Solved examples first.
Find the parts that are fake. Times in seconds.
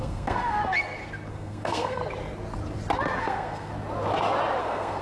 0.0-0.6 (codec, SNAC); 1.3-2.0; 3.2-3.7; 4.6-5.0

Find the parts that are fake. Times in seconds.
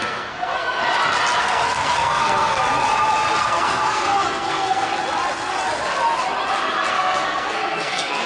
0.0-0.8 (codec, SNAC); 1.4-2.6; 3.4-4.9; 6.9-8.3